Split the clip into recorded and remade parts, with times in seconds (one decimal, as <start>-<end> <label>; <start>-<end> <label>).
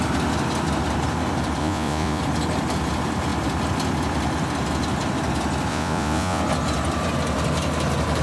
0.0-1.6 recorded; 1.6-2.2 remade; 2.2-5.7 recorded; 5.7-6.4 remade; 6.4-8.2 recorded